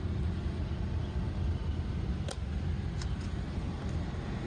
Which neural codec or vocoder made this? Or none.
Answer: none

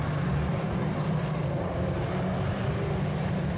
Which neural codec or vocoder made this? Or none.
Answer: vocoder, BigVGAN v2